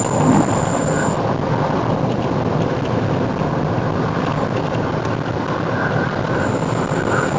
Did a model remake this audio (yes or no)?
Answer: no